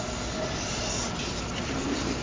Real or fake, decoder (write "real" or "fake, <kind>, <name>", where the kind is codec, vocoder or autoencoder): real